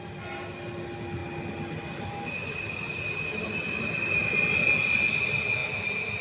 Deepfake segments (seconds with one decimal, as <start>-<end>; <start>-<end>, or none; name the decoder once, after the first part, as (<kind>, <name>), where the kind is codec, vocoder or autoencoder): none